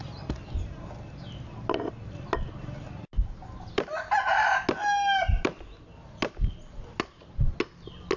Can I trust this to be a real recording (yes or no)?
yes